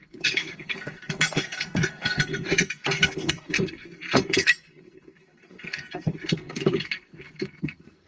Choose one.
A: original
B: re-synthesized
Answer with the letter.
B